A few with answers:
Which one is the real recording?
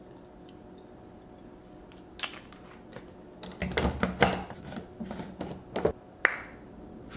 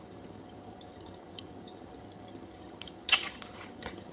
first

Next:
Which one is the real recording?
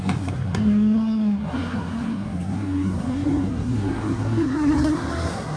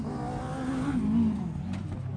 second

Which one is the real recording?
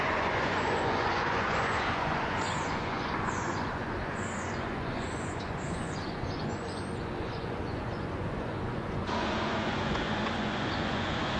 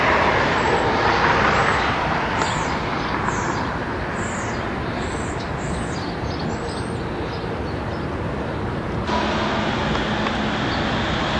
second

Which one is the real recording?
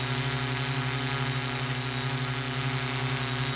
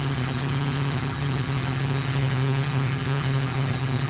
first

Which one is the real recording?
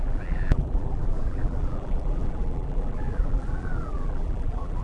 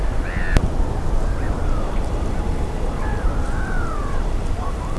second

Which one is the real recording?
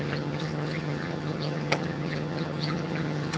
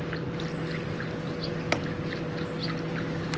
second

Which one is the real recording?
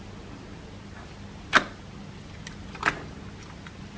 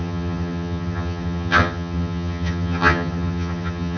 first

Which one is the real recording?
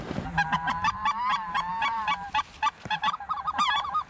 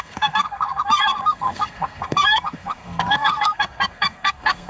first